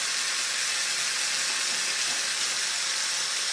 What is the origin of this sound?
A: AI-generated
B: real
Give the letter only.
B